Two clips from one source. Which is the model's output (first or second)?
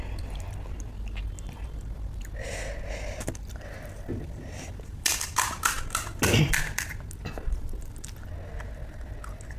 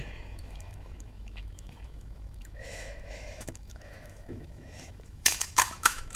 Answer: second